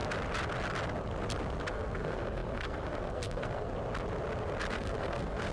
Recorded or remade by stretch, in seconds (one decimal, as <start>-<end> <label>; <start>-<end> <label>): 0.0-1.7 recorded; 1.7-3.7 remade; 3.7-4.7 recorded; 4.7-5.5 remade